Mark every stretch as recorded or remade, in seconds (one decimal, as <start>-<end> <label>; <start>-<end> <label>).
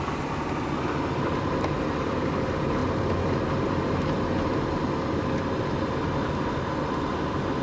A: 0.0-7.6 recorded